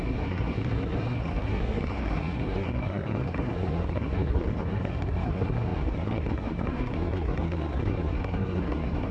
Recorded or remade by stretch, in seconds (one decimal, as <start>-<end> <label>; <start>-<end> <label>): 0.0-9.1 remade